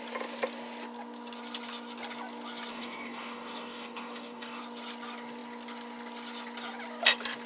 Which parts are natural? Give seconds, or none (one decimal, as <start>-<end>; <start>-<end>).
0.0-2.7; 4.6-7.5